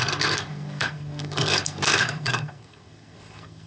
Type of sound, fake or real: fake